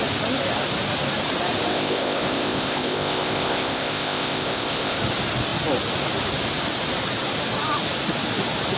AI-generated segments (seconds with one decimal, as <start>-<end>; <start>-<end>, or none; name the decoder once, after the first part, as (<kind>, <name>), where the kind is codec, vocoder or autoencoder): 1.7-5.0 (codec, ZipCodec)